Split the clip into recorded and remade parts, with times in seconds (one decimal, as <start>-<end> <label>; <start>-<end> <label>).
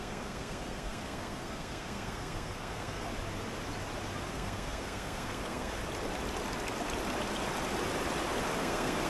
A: 0.0-3.1 remade; 3.1-4.3 recorded; 4.3-5.8 remade; 5.8-8.6 recorded; 8.6-9.1 remade